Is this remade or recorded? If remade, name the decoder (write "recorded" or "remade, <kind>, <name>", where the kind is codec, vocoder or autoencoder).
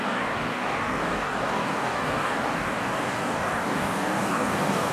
remade, codec, DAC